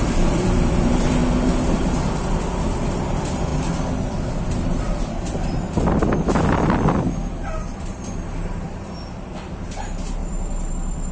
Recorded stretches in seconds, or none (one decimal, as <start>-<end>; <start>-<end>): 1.2-2.3; 3.5-7.8